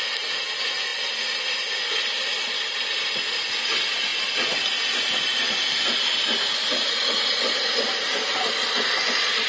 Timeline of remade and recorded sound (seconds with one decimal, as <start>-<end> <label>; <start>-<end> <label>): 0.0-6.6 recorded; 6.6-7.2 remade; 7.2-9.5 recorded